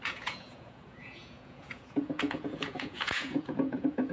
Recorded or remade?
remade